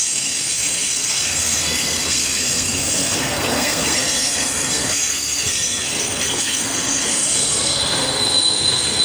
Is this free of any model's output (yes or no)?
no